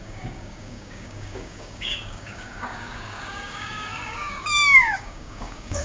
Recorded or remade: remade